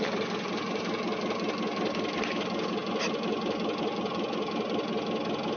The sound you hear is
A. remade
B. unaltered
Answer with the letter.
B